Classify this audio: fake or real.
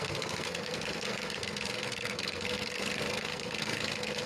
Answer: fake